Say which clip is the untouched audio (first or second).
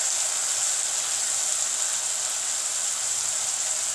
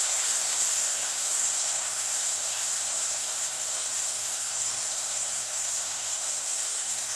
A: first